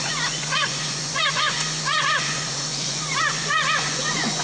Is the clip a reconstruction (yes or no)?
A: yes